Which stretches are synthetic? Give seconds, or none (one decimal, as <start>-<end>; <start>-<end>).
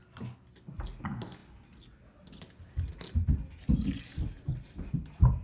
none